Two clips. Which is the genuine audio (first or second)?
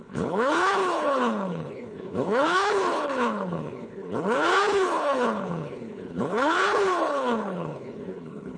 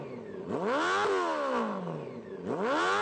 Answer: second